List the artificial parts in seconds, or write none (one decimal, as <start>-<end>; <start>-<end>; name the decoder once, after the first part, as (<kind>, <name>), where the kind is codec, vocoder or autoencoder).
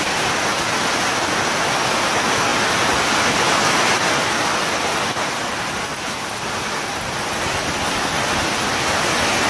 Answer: none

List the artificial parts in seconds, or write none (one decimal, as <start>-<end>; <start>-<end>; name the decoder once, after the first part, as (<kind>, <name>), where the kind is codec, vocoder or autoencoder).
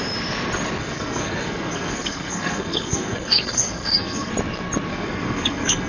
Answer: 0.8-4.3 (codec, SNAC); 4.9-5.9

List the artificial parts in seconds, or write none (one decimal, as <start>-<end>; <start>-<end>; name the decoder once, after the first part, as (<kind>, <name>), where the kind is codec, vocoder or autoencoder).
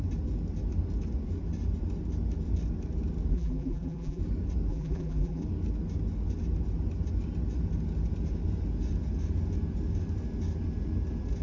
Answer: 3.3-4.2 (vocoder, BigVGAN v2); 4.7-5.4